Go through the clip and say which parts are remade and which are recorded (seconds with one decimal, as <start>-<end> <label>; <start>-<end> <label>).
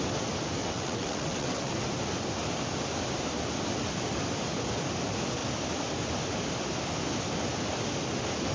0.0-0.6 recorded; 0.6-1.7 remade; 1.7-8.5 recorded